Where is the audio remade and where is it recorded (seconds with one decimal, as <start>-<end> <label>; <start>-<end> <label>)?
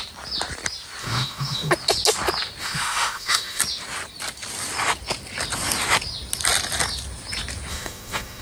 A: 0.0-1.0 recorded; 1.0-1.7 remade; 1.7-2.6 recorded; 2.6-3.6 remade; 3.6-7.7 recorded; 7.7-8.4 remade